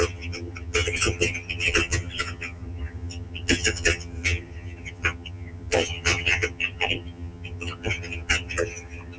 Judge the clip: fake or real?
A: fake